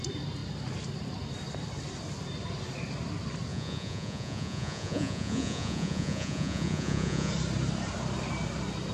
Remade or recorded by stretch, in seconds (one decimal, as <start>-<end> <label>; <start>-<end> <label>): 0.0-3.5 recorded; 3.5-7.3 remade; 7.3-8.9 recorded